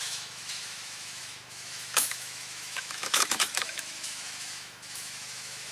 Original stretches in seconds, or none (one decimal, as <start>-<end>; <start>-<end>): none